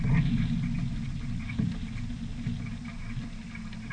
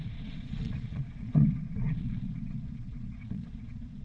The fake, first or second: second